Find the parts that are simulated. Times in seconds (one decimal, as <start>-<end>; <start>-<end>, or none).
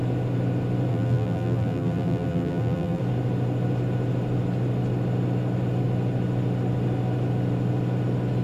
0.9-3.0